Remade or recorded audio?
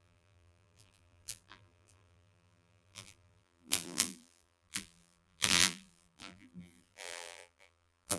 remade